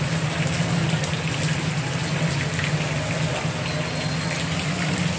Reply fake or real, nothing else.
real